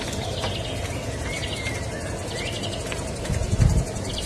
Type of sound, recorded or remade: recorded